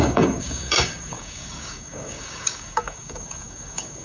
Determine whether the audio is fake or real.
fake